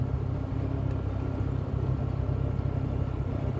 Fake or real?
real